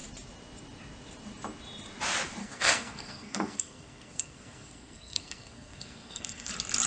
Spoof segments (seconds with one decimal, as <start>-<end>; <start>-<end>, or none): 2.4-6.5